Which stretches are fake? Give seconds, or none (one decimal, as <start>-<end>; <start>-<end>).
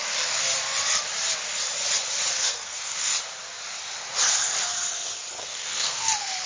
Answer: 0.0-0.4; 2.3-3.1; 5.4-6.5